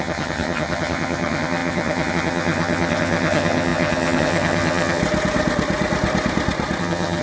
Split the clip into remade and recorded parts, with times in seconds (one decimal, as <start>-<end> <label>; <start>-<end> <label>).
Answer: 0.0-5.0 remade; 5.0-6.8 recorded; 6.8-7.2 remade